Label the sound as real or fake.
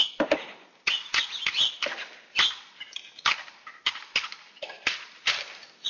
real